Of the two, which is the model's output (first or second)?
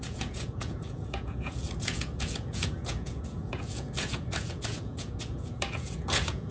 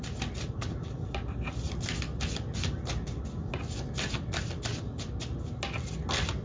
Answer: first